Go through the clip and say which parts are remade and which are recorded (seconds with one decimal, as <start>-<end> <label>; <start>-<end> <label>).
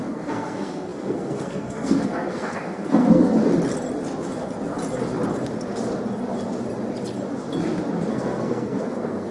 0.0-3.4 remade; 3.4-8.1 recorded; 8.1-9.3 remade